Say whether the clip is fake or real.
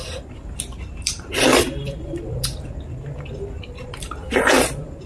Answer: fake